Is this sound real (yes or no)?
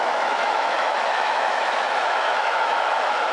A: no